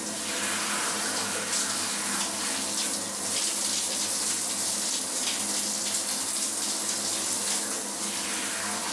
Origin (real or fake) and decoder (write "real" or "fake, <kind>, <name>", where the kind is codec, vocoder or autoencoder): real